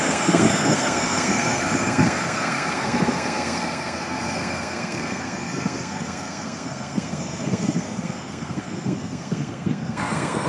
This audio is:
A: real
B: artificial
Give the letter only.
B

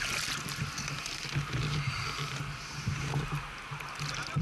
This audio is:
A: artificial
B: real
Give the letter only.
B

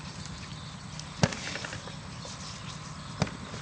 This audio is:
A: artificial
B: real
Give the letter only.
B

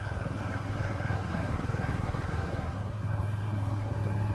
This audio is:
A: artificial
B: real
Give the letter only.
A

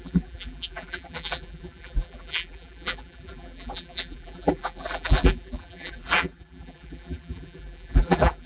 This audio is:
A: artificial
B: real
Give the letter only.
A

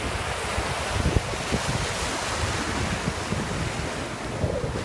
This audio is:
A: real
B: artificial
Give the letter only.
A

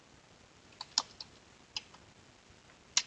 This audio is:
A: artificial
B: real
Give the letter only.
B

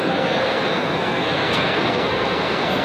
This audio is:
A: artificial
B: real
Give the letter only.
A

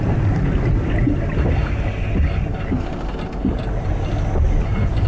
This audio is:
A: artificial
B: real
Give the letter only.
B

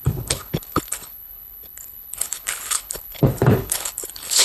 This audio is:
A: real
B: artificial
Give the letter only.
B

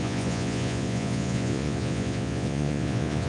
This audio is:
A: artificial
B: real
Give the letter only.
A